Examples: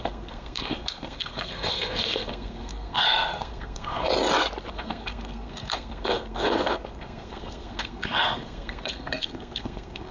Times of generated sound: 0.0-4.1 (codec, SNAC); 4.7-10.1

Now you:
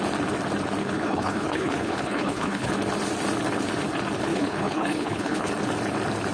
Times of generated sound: 0.8-2.7 (codec, HILCodec); 4.3-5.5

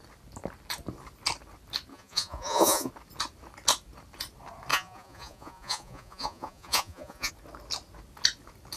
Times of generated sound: 1.9-2.9 (vocoder, Vocos); 4.7-7.3

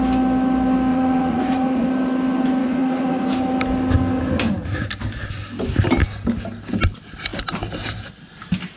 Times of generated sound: 0.9-1.9 (vocoder, Vocos); 2.6-3.2

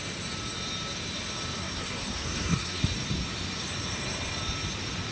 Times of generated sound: 1.6-2.8 (codec, SNAC)

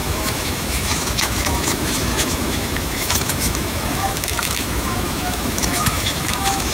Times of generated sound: 0.0-6.7 (autoencoder, DAC-VAE)

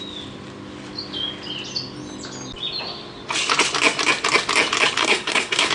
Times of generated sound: 5.0-5.7 (codec, SNAC)

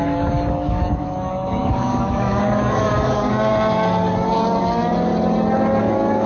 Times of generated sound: 0.0-3.5 (codec, DAC); 4.6-5.1; 5.8-6.3